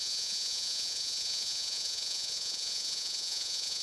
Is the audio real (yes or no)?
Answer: no